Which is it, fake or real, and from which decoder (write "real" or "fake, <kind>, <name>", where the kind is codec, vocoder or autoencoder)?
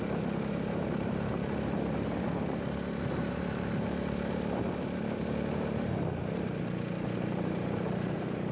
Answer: real